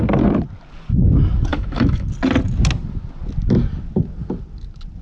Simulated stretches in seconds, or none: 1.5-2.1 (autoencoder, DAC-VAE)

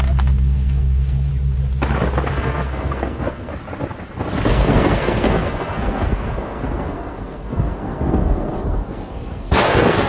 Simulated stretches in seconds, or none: 0.0-1.3 (codec, SNAC); 2.3-3.5; 4.5-10.1

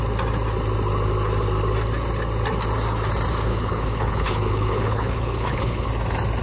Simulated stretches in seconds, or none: 3.5-5.9 (codec, HILCodec)

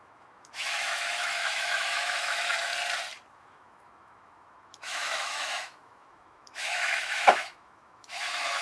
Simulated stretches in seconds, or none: 0.0-2.7 (autoencoder, DAC-VAE); 3.3-8.6

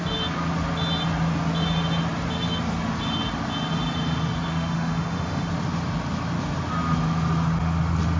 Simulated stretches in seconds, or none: 4.5-5.5 (autoencoder, DAC-VAE)

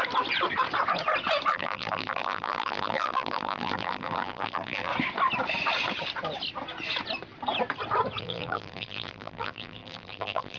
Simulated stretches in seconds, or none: 1.5-4.9 (vocoder, BigVGAN v2); 8.2-10.6

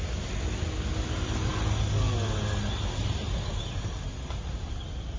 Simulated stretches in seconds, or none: none